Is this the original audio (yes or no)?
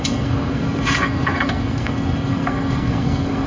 no